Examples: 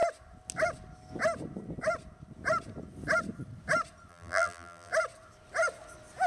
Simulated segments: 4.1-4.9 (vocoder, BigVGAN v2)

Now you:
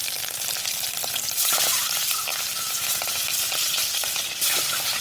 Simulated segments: 0.0-2.1 (vocoder, BigVGAN v2); 4.0-4.6

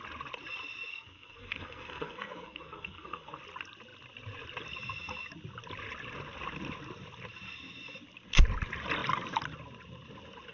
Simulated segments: 0.9-3.4 (codec, SNAC)